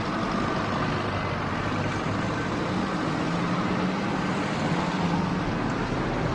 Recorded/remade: recorded